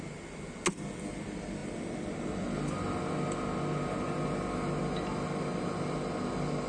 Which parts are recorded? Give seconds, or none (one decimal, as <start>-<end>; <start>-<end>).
0.0-6.7